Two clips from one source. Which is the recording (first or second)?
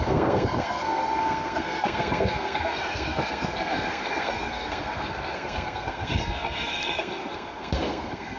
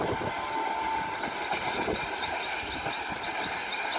second